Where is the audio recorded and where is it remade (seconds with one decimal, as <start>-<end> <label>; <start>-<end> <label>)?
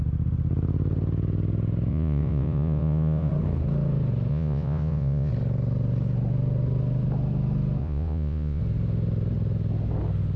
0.0-1.9 recorded; 1.9-3.3 remade; 3.3-4.3 recorded; 4.3-5.3 remade; 5.3-7.8 recorded; 7.8-8.6 remade; 8.6-10.4 recorded